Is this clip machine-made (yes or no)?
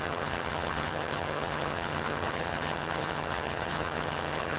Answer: yes